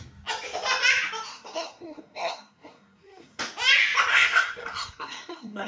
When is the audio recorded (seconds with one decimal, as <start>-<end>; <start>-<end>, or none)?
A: 0.0-1.3; 3.4-4.1

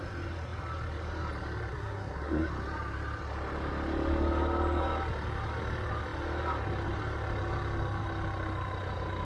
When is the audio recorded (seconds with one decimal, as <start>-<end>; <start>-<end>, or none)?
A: 0.0-1.7; 2.5-9.2